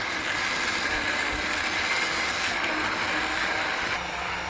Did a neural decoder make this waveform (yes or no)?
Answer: no